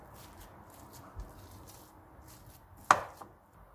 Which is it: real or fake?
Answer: real